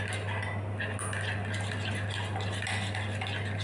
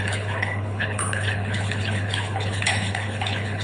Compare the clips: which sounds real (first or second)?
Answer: first